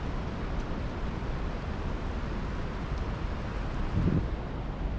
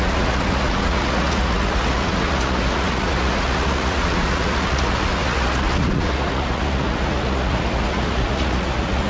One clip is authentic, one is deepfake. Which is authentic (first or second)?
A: first